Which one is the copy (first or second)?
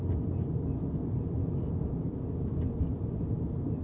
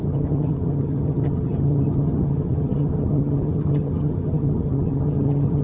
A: second